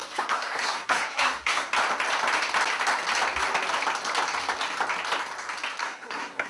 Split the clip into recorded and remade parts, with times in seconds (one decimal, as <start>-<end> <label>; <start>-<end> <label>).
0.0-1.7 remade; 1.7-5.8 recorded; 5.8-6.5 remade